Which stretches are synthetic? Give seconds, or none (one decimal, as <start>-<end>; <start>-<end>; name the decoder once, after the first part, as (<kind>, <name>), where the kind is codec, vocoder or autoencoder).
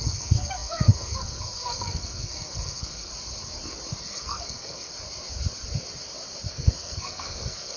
0.0-3.1 (codec, SNAC); 4.0-4.9; 6.5-7.8